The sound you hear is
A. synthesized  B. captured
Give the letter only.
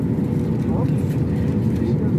B